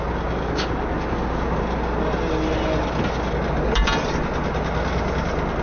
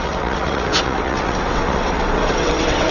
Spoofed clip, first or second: second